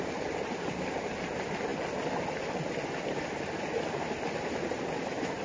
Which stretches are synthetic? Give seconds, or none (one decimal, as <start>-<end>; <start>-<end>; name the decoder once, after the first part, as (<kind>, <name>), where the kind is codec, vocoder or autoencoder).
none

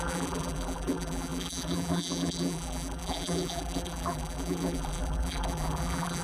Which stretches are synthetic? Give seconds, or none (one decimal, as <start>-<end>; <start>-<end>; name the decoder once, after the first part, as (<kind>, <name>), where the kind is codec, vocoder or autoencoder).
0.0-6.2 (vocoder, BigVGAN v2)

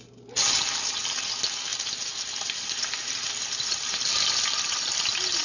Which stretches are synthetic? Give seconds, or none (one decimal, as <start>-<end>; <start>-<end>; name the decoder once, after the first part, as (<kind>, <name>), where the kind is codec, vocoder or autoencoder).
none

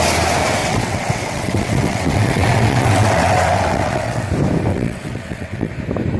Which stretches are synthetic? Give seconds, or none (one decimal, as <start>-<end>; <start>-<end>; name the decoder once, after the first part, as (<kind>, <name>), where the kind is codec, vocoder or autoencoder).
0.6-4.3 (vocoder, WaveNeXt); 4.7-5.7